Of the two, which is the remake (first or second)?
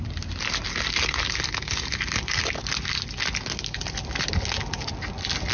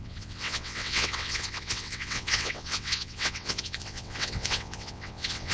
second